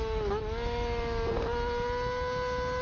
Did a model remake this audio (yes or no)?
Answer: no